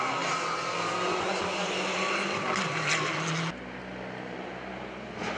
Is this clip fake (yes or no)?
no